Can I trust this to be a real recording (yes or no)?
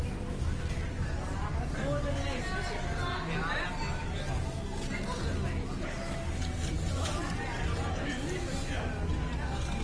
yes